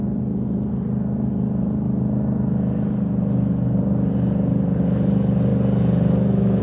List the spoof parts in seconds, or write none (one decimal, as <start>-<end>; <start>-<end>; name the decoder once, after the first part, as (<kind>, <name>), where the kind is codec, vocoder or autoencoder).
none